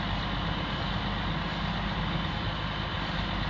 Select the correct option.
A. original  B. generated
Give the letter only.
A